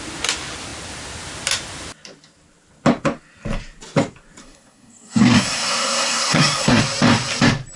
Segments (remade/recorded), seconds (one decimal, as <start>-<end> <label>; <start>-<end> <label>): 0.0-4.4 recorded; 4.4-6.8 remade; 6.8-7.8 recorded